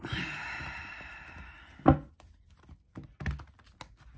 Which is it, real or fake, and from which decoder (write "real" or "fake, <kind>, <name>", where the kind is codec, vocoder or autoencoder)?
real